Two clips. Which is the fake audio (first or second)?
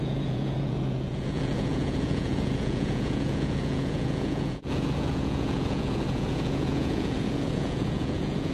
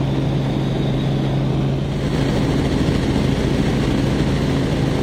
first